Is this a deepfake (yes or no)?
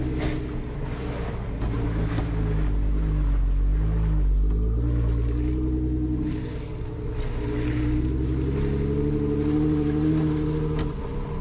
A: no